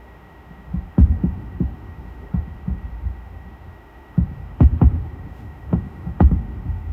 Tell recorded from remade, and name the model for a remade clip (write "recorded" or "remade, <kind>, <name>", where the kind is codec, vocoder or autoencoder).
remade, autoencoder, DAC-VAE